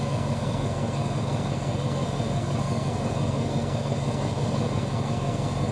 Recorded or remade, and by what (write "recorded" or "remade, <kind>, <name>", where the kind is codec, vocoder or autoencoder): remade, codec, SNAC